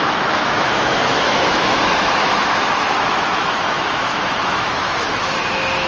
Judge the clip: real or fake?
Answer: fake